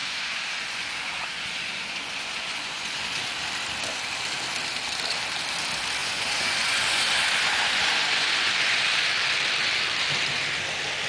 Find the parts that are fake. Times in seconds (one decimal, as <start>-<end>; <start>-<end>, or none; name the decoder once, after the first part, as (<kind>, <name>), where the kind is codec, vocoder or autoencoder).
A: 0.0-3.3 (vocoder, Vocos); 6.0-9.1